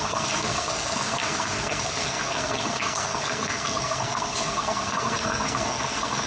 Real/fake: fake